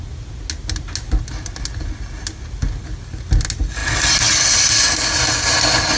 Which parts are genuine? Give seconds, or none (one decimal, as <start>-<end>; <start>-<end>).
0.0-6.0